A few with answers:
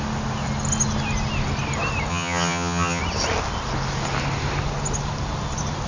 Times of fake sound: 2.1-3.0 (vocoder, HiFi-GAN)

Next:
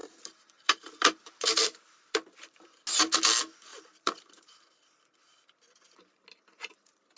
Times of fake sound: 0.0-2.7 (vocoder, BigVGAN v2); 3.7-4.3

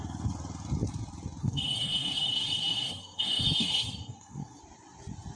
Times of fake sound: 1.4-4.6 (codec, SNAC)

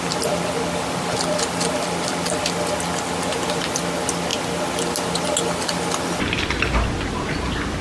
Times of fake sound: none

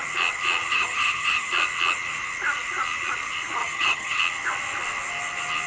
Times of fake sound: 0.7-1.5 (vocoder, HiFi-GAN); 3.6-4.2

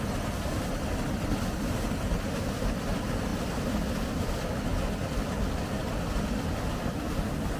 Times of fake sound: none

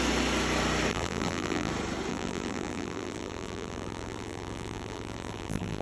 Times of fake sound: 0.9-1.7 (vocoder, BigVGAN v2); 2.1-5.8